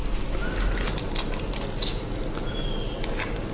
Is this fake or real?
real